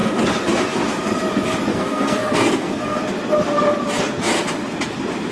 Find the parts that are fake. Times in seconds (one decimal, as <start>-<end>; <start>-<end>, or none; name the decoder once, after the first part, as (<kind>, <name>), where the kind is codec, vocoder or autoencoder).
1.7-3.0 (codec, SNAC)